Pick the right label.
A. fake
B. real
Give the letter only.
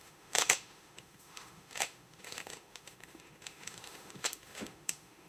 A